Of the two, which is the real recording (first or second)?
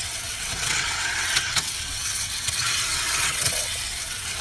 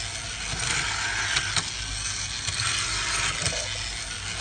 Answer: second